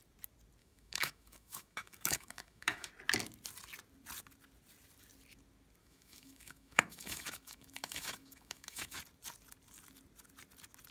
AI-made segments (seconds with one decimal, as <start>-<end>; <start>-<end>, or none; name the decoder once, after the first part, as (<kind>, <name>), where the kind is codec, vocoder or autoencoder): 0.6-2.9 (autoencoder, DAC-VAE); 5.8-9.0